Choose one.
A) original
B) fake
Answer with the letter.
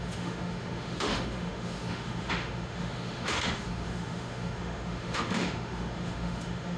B